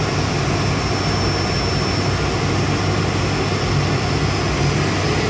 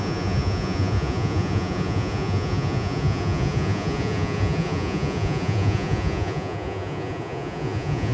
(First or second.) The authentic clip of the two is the first